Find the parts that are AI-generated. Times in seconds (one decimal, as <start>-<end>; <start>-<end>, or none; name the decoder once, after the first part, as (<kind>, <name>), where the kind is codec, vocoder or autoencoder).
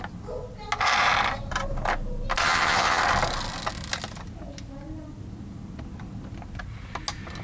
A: 2.4-3.0 (vocoder, HiFi-GAN)